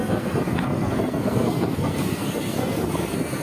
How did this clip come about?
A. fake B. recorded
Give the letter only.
A